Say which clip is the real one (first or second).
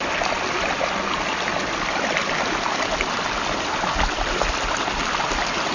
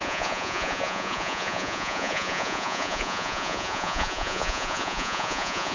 first